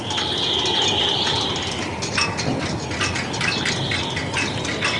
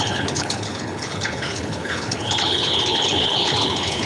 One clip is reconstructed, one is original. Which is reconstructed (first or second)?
second